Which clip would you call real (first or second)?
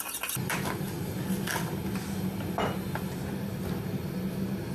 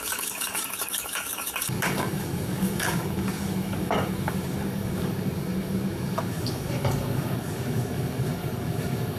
first